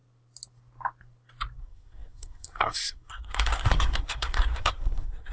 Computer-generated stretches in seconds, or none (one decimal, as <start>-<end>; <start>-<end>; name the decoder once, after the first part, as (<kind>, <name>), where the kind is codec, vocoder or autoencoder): 1.6-5.3 (codec, SNAC)